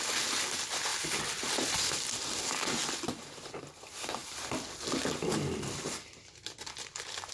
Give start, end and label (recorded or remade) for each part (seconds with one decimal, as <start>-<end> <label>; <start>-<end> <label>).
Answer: 0.0-7.3 recorded